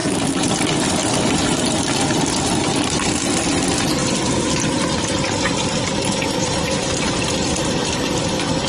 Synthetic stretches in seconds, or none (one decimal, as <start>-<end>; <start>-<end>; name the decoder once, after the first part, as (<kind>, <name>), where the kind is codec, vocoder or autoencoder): 0.0-4.0 (vocoder, BigVGAN v2); 7.6-8.7